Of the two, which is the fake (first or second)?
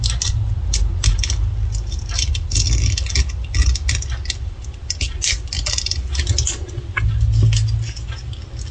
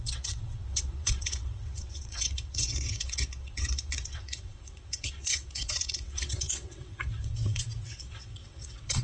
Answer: second